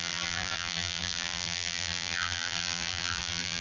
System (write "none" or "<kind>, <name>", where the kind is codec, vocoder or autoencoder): vocoder, BigVGAN v2